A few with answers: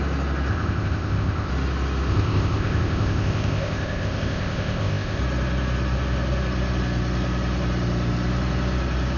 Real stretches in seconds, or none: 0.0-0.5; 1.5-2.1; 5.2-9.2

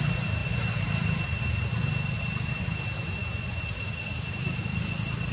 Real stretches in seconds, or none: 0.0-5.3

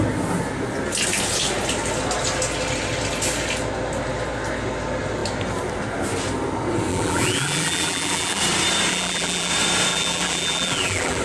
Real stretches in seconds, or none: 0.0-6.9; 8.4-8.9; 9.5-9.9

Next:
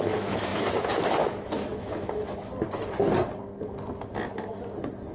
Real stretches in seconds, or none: 2.5-5.1